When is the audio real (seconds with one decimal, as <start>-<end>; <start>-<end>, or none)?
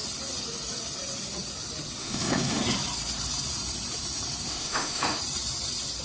0.0-2.0; 2.6-4.5; 5.2-6.0